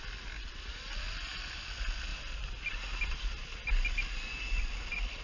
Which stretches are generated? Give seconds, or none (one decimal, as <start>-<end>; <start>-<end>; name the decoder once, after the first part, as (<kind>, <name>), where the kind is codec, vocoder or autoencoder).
none